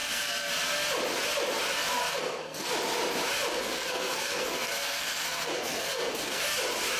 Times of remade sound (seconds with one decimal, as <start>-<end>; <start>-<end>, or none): 0.0-0.5; 2.1-2.7; 3.5-6.4